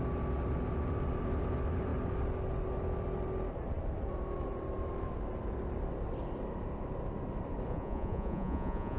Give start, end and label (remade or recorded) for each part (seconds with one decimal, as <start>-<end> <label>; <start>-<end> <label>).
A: 0.0-7.7 recorded; 7.7-9.0 remade